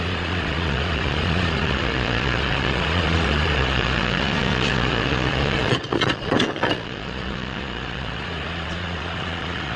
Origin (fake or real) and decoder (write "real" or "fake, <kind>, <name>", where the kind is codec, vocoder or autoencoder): fake, vocoder, Vocos